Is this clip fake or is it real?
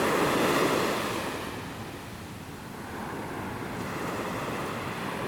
fake